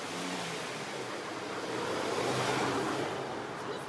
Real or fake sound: real